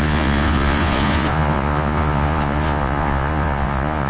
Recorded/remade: remade